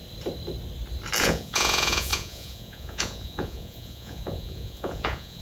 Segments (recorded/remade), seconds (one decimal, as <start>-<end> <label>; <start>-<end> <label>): 0.0-1.2 recorded; 1.2-5.4 remade